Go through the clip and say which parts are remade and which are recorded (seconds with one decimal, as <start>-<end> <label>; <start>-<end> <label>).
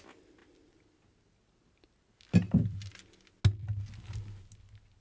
0.0-5.0 recorded